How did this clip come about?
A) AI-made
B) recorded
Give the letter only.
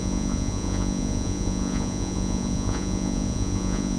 A